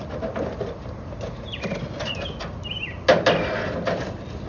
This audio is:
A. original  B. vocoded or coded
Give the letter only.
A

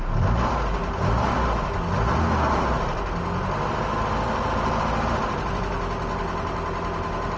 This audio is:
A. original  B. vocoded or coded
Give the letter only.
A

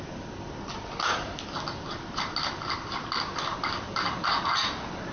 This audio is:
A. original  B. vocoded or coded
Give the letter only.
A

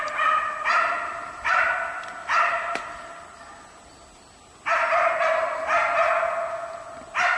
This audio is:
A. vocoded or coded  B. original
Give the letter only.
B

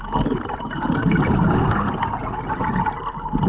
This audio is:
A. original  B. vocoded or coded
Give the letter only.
A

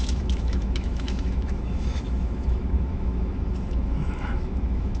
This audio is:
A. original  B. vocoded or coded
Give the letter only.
B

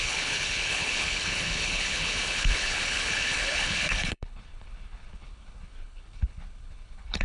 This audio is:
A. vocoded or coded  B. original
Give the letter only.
A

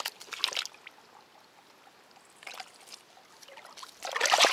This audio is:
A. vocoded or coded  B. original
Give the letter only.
B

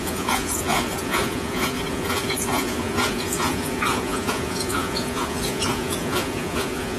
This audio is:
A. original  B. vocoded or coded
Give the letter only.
B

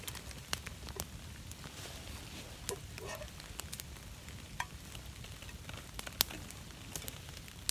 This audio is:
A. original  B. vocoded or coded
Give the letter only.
A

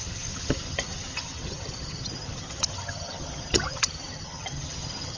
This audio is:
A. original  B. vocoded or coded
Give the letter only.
B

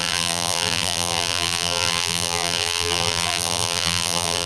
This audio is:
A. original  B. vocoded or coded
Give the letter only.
B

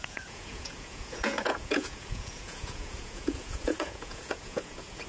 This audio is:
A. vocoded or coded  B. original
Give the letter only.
A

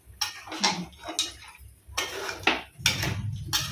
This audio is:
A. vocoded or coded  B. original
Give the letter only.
B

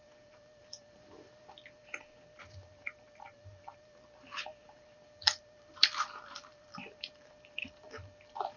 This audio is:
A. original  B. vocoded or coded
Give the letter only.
B